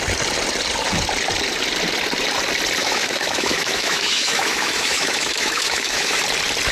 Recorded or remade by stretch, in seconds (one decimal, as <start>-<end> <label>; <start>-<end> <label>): 0.0-2.8 recorded; 2.8-6.2 remade; 6.2-6.7 recorded